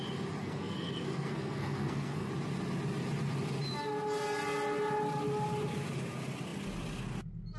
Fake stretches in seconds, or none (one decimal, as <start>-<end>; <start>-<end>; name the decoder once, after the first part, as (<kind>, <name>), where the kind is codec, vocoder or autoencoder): 0.4-2.3 (codec, SNAC)